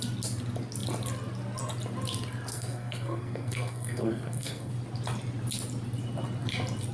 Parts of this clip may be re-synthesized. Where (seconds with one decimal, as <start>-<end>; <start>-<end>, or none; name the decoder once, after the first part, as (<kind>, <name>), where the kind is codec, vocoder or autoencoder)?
2.5-4.7 (codec, SNAC)